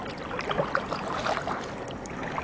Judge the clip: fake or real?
real